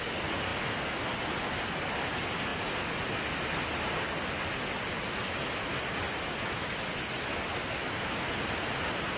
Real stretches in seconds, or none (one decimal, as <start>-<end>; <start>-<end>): 0.0-9.2

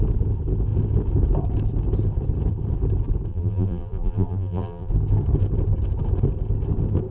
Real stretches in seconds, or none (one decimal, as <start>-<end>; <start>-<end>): 0.0-3.3; 4.9-7.1

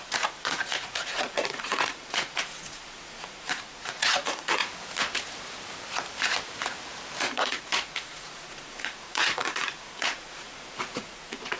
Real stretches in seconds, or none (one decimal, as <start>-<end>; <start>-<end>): 4.6-7.2

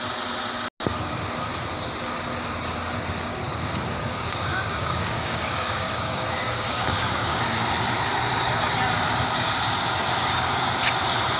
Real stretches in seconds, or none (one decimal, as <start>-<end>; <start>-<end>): 0.0-3.3; 7.4-10.2; 10.7-11.4

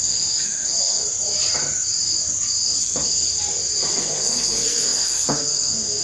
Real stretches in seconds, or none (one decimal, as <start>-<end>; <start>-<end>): 1.0-2.8; 3.3-3.9

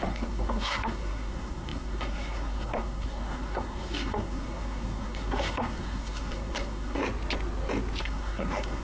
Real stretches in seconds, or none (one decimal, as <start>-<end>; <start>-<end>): 7.0-8.0

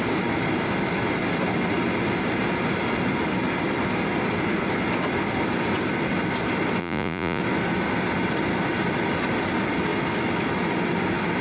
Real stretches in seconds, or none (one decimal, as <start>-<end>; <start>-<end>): 0.0-6.8; 7.4-11.4